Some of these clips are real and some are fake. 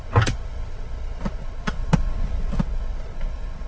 real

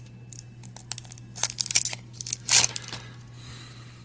real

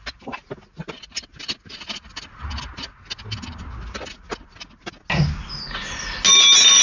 real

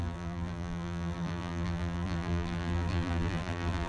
fake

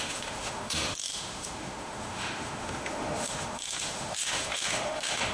fake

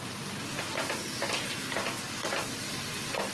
real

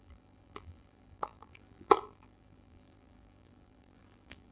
fake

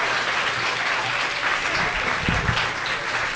real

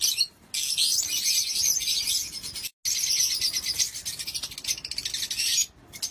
real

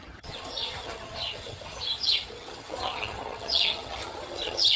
fake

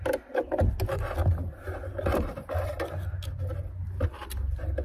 real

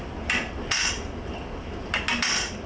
real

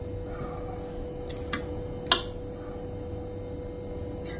real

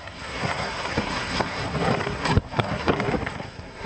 fake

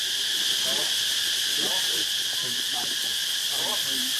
real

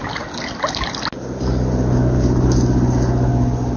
real